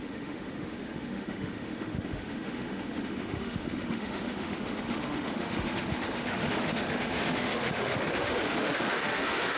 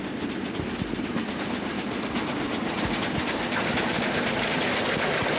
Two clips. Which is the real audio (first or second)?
second